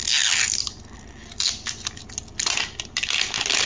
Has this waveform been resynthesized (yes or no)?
no